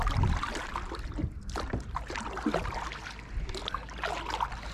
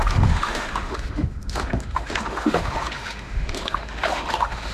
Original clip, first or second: first